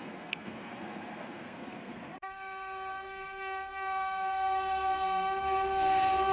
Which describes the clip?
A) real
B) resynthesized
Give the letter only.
B